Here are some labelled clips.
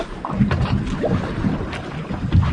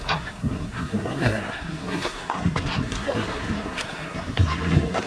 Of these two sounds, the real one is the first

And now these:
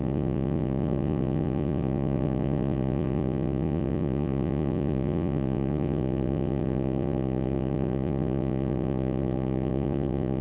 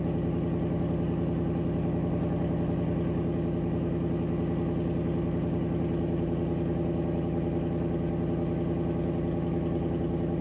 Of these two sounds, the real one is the second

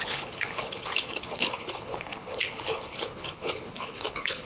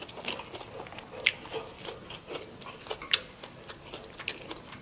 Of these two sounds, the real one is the second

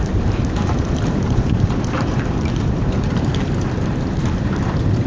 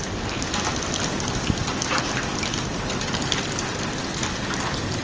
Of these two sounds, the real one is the second